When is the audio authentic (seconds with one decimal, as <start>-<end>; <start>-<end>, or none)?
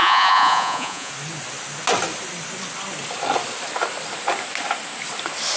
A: 1.1-5.6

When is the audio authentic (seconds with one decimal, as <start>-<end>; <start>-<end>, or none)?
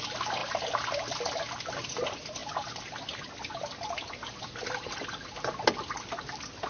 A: 0.0-6.7